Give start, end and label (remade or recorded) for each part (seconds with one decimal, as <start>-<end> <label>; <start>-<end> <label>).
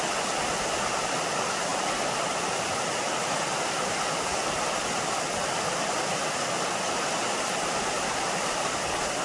0.0-9.2 recorded